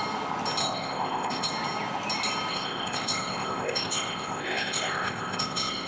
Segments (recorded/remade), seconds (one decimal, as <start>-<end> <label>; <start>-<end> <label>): 0.0-0.6 recorded; 0.6-1.5 remade; 1.5-2.5 recorded; 2.5-5.9 remade